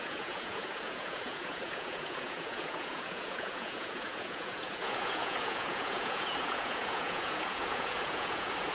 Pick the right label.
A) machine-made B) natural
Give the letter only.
A